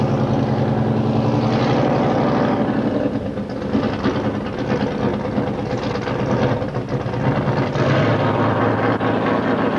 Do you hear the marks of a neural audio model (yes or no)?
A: no